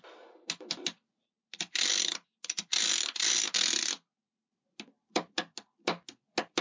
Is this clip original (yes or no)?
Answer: yes